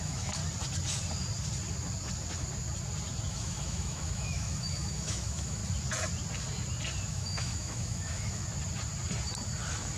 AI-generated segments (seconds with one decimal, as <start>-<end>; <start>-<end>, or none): 0.0-0.4; 3.3-5.6; 7.1-8.4